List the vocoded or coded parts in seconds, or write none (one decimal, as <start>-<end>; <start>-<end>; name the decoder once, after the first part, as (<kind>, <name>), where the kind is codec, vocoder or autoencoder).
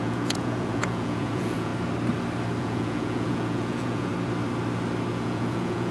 0.0-1.7 (vocoder, Vocos); 2.6-4.1; 5.1-5.9